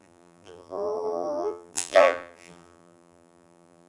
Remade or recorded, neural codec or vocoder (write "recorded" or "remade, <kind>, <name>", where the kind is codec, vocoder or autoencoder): remade, vocoder, BigVGAN v2